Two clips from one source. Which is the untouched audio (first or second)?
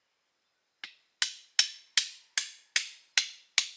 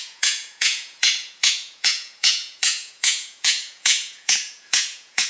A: first